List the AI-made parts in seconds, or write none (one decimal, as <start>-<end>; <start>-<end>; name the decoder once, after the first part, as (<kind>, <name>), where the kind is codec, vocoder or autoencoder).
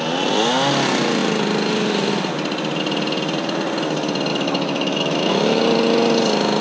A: 4.3-5.6 (autoencoder, DAC-VAE)